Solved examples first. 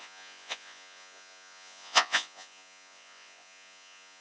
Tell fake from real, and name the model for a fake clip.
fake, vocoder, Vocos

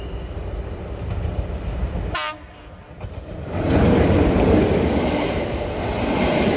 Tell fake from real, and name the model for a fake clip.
real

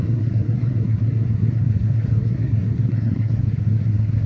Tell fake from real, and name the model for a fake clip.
fake, codec, SNAC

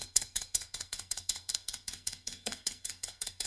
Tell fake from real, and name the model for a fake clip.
fake, codec, SNAC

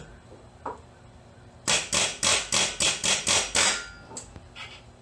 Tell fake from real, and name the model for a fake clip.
real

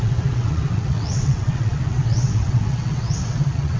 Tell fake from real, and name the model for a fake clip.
fake, vocoder, WaveNeXt